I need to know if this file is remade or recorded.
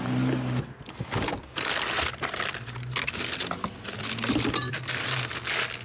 recorded